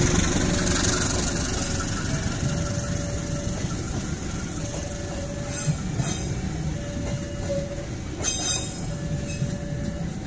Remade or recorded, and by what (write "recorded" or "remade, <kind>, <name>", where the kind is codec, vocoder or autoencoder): recorded